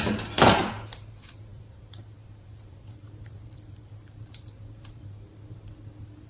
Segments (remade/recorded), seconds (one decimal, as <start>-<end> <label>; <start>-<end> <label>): 0.0-5.3 remade; 5.3-6.3 recorded